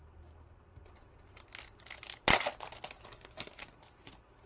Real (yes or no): yes